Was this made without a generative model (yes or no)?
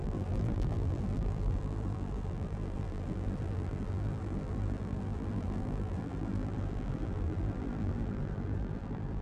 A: no